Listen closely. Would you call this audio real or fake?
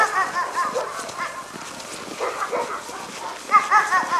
real